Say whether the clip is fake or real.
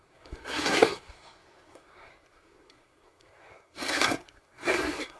fake